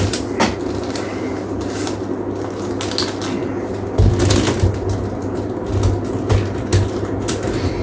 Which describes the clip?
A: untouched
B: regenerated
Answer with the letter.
A